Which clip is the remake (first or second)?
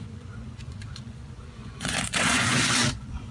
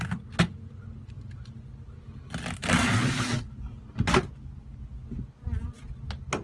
first